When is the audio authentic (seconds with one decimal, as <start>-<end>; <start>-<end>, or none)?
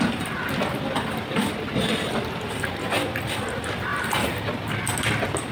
0.0-3.9; 4.5-5.5